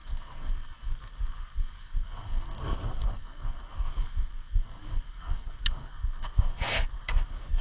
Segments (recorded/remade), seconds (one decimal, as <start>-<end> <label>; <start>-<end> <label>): 0.0-7.6 remade